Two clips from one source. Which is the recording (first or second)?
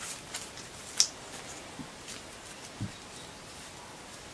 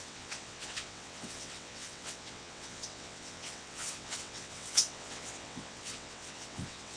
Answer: first